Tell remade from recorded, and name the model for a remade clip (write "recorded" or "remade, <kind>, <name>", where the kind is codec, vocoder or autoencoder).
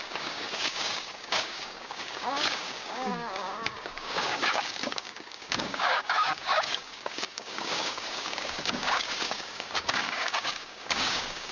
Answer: remade, codec, DAC